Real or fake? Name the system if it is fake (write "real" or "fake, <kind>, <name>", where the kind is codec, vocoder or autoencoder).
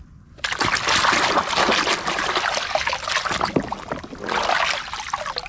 real